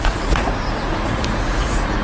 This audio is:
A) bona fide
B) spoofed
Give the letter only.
B